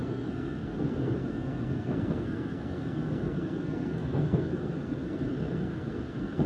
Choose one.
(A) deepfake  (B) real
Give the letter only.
A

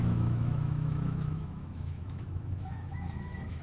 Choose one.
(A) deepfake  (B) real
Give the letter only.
A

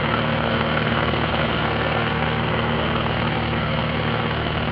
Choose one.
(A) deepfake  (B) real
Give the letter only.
A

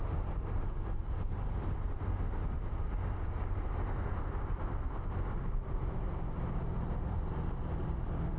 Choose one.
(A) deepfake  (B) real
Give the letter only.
A